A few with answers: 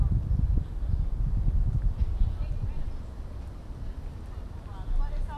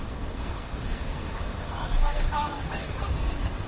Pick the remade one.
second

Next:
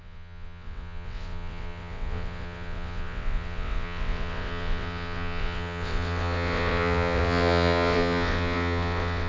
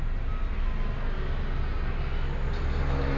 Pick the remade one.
first